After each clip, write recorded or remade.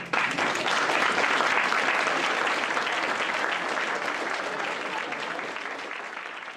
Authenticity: recorded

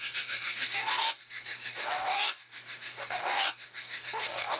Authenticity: remade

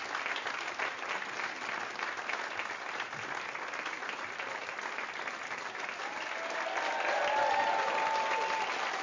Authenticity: recorded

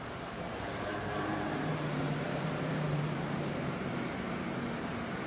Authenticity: remade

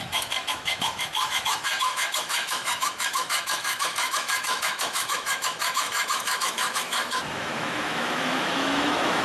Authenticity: remade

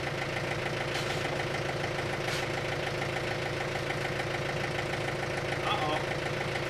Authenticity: recorded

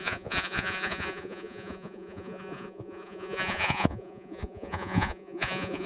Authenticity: remade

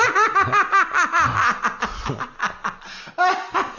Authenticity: recorded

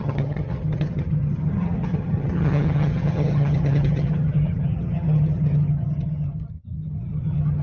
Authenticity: remade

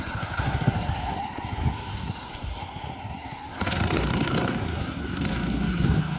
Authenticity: remade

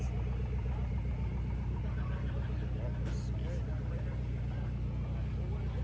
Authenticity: recorded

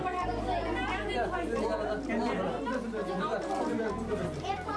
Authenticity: recorded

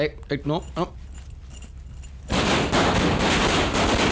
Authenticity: recorded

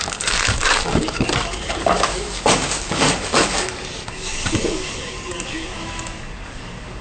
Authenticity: remade